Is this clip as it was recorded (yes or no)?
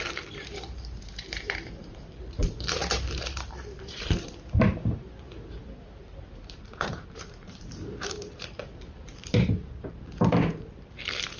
no